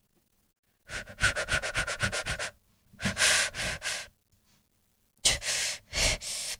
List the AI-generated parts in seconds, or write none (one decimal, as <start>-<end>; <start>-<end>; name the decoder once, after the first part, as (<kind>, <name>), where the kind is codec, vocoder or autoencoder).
0.0-2.2 (vocoder, Vocos)

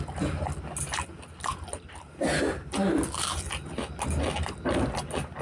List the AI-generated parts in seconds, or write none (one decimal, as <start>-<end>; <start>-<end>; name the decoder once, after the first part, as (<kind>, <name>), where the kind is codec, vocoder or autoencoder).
none

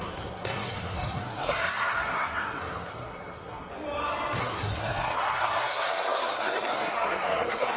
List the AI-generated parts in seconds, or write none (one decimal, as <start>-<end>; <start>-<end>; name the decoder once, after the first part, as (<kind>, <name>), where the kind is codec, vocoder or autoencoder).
0.0-3.7 (codec, SNAC); 4.4-7.8

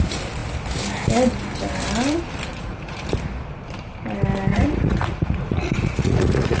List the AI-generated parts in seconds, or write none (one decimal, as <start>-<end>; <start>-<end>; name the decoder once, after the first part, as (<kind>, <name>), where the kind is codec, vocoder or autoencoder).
2.5-3.0 (vocoder, Vocos); 4.5-6.6

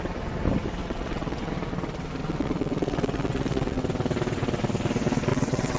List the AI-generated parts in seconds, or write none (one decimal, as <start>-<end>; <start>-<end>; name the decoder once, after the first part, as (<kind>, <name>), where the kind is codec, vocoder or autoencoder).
0.8-1.5 (vocoder, WaveNeXt); 2.2-3.8; 5.3-5.8

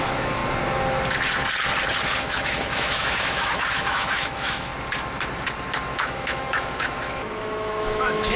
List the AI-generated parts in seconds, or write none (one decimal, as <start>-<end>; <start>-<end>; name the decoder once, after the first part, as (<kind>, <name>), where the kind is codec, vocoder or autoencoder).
0.0-0.4 (autoencoder, DAC-VAE); 2.2-4.7; 5.9-8.4

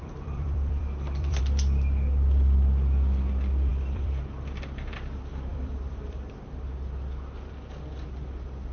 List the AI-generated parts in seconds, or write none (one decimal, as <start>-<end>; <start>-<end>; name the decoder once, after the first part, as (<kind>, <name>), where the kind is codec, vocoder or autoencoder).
0.0-1.4 (vocoder, BigVGAN v2); 3.7-4.2; 5.5-6.4